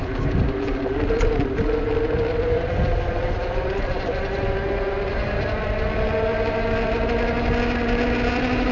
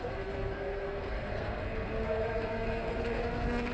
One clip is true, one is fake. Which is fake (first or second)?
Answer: second